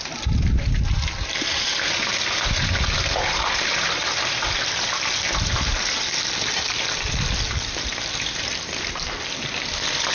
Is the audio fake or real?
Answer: real